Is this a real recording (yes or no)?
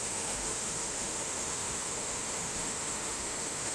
no